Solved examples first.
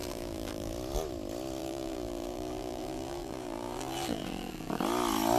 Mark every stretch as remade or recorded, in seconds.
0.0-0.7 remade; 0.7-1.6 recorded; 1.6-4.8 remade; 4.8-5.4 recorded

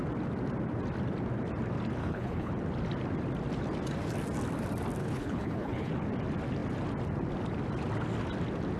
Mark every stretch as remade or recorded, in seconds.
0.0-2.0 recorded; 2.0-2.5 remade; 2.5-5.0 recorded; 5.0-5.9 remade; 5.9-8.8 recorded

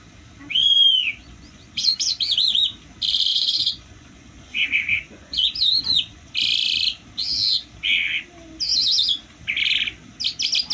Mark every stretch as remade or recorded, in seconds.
0.0-1.1 recorded; 1.1-2.1 remade; 2.1-3.3 recorded; 3.3-6.3 remade; 6.3-10.7 recorded

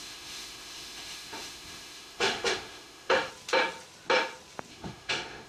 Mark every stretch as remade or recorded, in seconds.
0.0-3.3 remade; 3.3-4.7 recorded; 4.7-5.5 remade

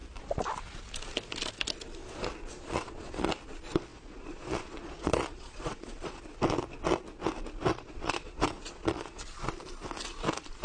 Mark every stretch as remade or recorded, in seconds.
0.0-2.5 recorded; 2.5-3.3 remade; 3.3-3.9 recorded; 3.9-6.2 remade; 6.2-7.7 recorded; 7.7-9.2 remade; 9.2-10.6 recorded

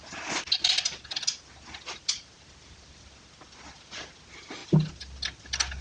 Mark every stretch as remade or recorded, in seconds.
0.0-5.8 recorded